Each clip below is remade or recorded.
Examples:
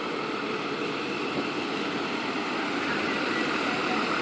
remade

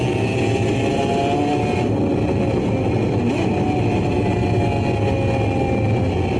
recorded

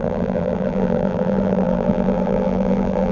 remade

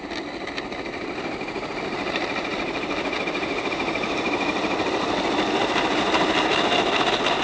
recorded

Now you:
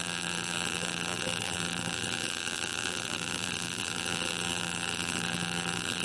remade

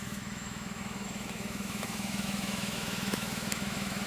remade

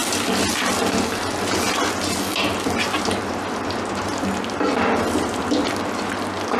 recorded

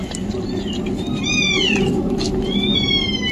recorded